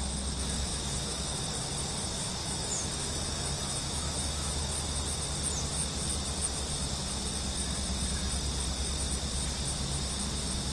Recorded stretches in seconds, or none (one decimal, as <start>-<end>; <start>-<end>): 0.0-0.7; 1.4-2.4; 4.5-10.7